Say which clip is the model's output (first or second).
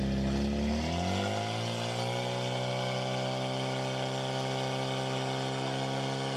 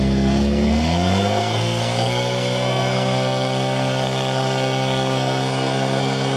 second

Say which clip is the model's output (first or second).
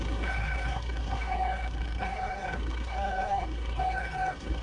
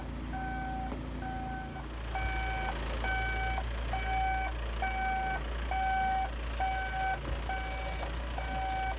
first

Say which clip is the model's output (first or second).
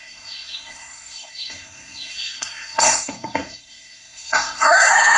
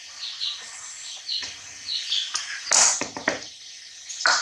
first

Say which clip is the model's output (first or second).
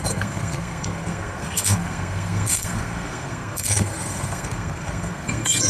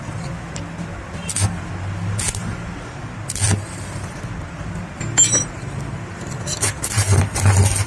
first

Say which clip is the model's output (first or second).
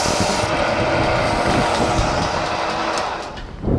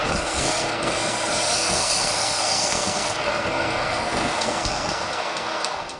second